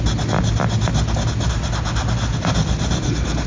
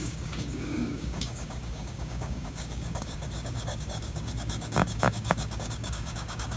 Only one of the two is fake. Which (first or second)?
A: second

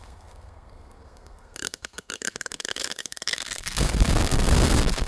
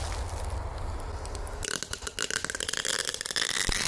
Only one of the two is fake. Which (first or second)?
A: first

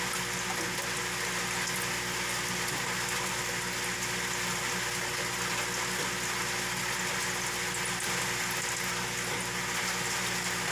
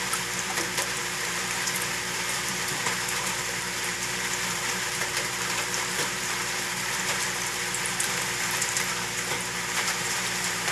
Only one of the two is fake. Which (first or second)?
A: second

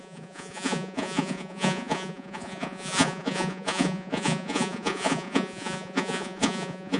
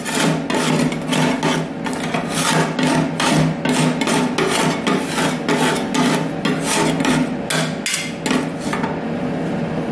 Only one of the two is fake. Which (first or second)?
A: first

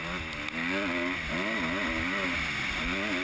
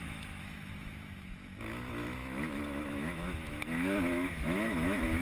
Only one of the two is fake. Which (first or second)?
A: second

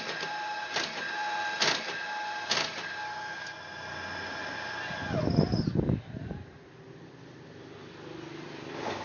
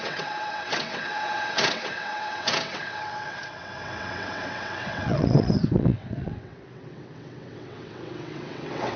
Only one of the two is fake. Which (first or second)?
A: second